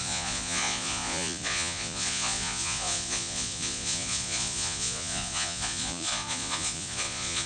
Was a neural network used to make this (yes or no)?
yes